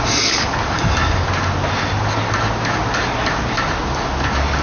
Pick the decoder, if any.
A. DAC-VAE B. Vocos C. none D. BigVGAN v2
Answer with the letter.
C